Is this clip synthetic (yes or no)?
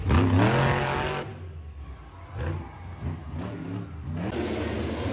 no